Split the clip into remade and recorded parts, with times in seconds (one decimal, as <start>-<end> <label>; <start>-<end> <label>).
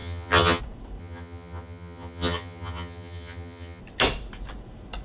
0.0-0.6 remade; 0.6-1.0 recorded; 1.0-3.8 remade; 3.8-5.0 recorded